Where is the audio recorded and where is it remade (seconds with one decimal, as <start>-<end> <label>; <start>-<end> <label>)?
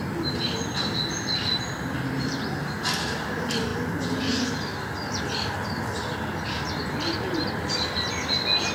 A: 0.0-3.7 remade; 3.7-6.4 recorded; 6.4-8.7 remade